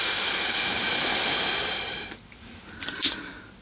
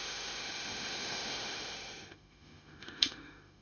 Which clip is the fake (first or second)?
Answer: second